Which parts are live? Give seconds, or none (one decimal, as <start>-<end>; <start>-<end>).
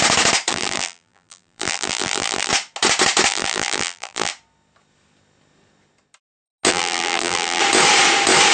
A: 0.0-0.5; 2.5-3.3; 4.3-6.7; 7.6-8.5